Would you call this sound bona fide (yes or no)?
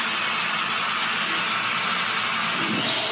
yes